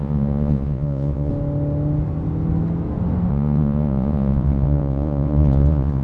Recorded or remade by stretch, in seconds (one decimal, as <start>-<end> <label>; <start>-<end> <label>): 0.0-1.3 remade; 1.3-3.3 recorded; 3.3-6.0 remade